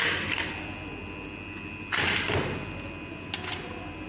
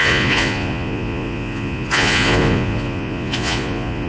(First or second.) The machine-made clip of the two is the second